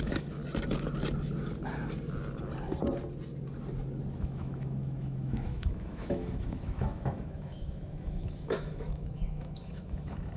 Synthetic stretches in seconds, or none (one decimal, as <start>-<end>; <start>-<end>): 0.0-0.4; 4.2-10.4